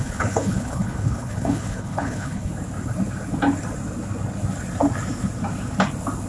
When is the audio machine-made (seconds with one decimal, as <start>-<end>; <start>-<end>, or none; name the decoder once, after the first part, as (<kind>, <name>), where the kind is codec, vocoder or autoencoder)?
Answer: 0.0-2.5 (codec, HILCodec)